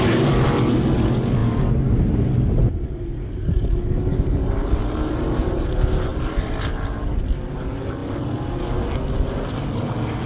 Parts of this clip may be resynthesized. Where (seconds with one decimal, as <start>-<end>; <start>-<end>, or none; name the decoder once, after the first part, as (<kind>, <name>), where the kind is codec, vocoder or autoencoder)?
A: 6.1-7.0 (vocoder, BigVGAN v2)